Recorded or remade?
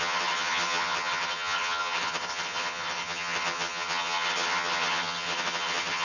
remade